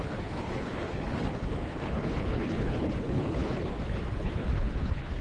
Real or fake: fake